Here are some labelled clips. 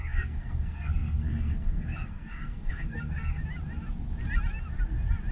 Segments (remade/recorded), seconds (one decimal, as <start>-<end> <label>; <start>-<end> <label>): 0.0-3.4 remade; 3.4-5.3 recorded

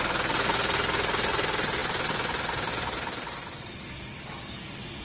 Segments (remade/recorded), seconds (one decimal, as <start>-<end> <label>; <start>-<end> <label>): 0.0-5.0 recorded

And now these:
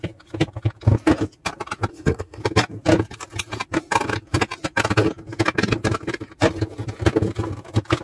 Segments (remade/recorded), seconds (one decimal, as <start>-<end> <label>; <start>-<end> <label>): 0.0-1.9 recorded; 1.9-2.4 remade; 2.4-8.0 recorded